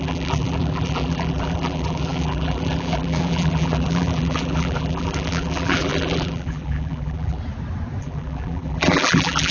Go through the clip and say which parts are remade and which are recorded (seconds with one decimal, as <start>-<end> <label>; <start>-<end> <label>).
0.0-7.4 remade; 7.4-8.0 recorded; 8.0-9.5 remade